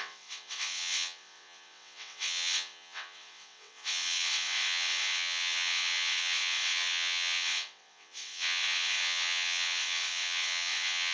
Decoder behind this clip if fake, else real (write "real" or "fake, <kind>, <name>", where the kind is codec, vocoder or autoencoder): fake, vocoder, WaveNeXt